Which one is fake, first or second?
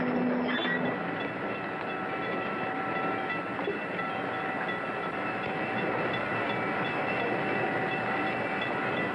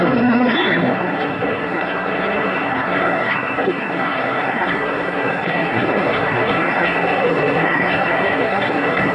second